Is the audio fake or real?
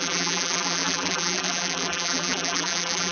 fake